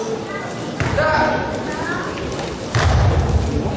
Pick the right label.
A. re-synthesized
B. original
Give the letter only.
B